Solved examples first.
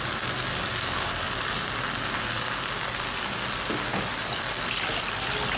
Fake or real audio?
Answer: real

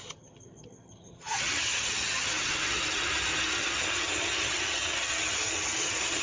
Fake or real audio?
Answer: fake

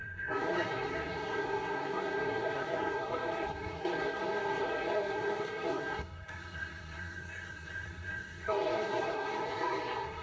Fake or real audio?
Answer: fake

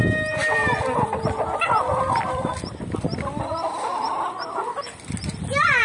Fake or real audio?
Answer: real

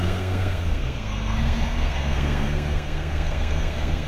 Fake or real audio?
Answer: fake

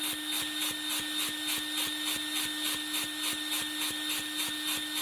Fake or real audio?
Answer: real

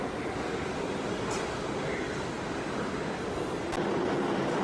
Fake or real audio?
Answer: real